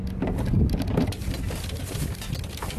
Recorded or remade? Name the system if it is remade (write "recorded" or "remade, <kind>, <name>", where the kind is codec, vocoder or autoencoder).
recorded